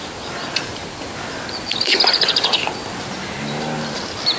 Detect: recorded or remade recorded